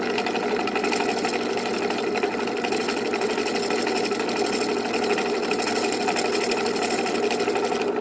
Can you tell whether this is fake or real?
real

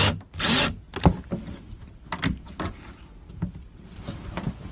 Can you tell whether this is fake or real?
real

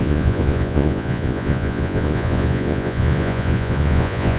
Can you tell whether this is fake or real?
fake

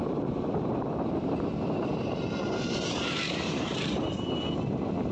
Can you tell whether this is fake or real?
real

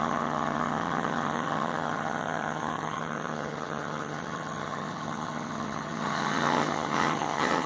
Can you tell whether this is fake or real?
fake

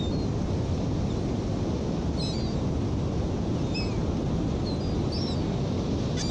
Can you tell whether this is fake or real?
real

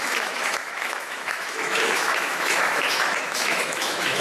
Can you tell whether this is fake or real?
fake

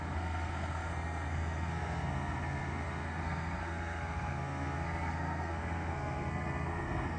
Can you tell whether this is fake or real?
fake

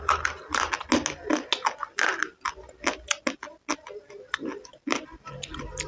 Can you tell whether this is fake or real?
real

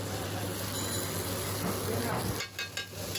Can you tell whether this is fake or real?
real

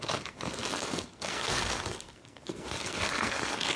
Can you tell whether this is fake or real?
fake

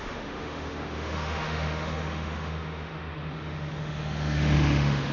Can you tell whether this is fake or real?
fake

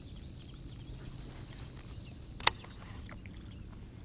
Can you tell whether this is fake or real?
real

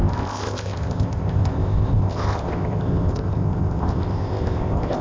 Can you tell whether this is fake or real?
fake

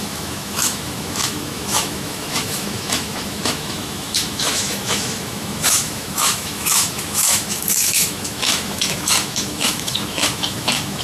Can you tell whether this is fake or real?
fake